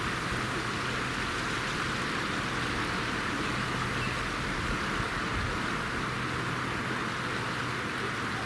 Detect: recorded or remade recorded